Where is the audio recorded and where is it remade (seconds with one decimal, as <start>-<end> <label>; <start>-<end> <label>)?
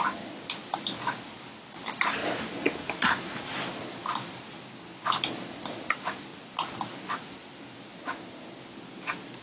0.0-6.3 remade; 6.3-7.3 recorded; 7.3-7.9 remade; 7.9-9.4 recorded